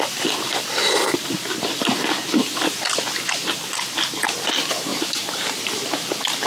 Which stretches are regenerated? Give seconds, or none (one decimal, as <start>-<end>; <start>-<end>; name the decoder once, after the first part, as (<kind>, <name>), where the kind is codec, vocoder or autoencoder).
4.9-5.6 (vocoder, BigVGAN v2)